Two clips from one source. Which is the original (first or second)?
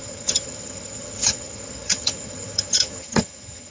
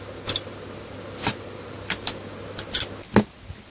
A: second